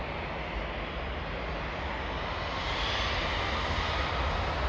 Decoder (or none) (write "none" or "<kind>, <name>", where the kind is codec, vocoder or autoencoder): none